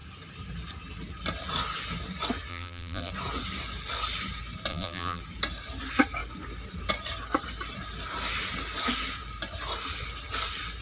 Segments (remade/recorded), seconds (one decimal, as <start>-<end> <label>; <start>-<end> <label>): 0.0-2.5 recorded; 2.5-3.1 remade; 3.1-4.7 recorded; 4.7-5.2 remade; 5.2-10.8 recorded